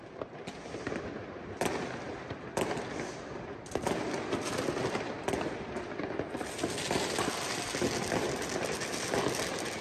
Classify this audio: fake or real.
real